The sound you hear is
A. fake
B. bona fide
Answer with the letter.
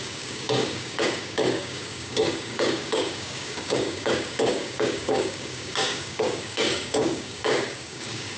A